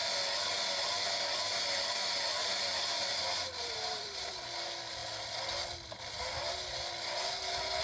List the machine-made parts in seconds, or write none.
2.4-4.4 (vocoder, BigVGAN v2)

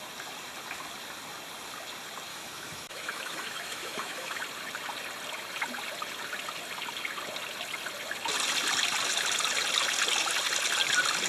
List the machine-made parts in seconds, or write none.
2.3-4.4 (autoencoder, DAC-VAE)

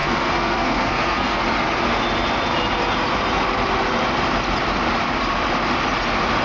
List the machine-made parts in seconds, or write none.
0.0-1.4 (codec, SNAC)

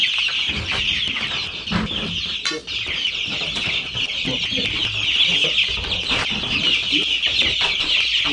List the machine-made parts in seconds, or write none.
none

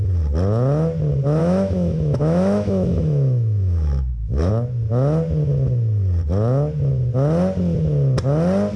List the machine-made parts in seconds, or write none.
1.4-4.5 (autoencoder, DAC-VAE)

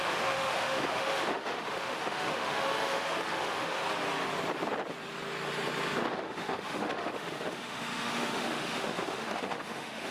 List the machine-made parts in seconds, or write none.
0.0-3.8 (autoencoder, DAC-VAE); 6.1-10.1

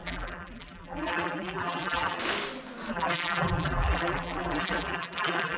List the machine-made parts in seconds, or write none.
0.0-2.2 (vocoder, BigVGAN v2); 2.9-5.6